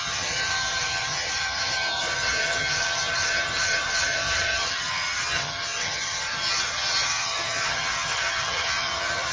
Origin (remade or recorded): remade